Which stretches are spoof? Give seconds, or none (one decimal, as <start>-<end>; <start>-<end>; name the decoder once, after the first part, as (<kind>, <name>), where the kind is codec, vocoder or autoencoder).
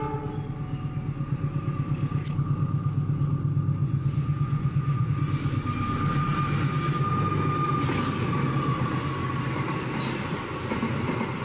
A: 3.8-5.1 (vocoder, Vocos)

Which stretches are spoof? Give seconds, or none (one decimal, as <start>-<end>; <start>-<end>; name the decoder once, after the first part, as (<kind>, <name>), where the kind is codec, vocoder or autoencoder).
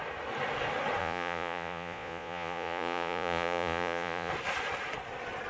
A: 1.0-4.3 (vocoder, Vocos)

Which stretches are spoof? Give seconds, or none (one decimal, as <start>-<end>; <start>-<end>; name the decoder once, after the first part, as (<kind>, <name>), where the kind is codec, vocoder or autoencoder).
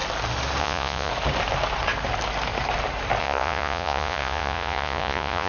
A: 0.6-1.1 (vocoder, Vocos); 3.2-5.5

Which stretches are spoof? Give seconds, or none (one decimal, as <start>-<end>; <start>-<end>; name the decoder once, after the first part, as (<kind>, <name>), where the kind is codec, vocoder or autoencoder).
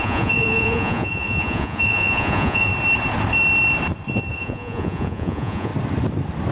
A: 0.0-2.7 (vocoder, Vocos); 4.3-5.7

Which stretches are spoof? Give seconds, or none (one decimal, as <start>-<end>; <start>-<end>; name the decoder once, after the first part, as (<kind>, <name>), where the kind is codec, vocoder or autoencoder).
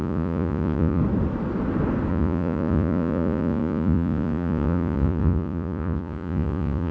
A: 0.0-1.0 (vocoder, Vocos); 2.1-6.9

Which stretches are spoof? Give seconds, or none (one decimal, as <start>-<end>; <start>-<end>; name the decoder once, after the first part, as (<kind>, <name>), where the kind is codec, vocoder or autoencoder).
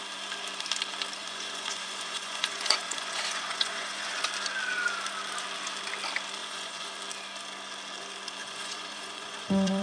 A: 1.2-4.2 (vocoder, Vocos); 6.4-6.9; 8.4-9.8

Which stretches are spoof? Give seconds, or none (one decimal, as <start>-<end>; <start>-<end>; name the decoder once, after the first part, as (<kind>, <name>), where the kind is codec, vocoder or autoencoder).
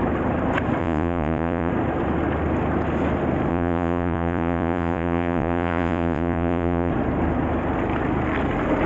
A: 0.8-1.7 (vocoder, Vocos); 3.5-6.9